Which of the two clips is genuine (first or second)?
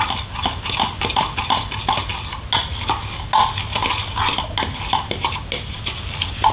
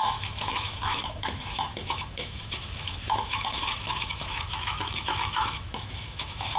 first